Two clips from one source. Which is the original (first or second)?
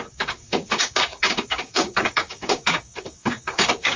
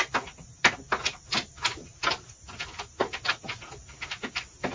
second